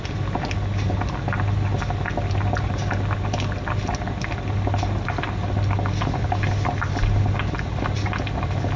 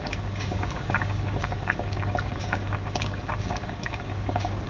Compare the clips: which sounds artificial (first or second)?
second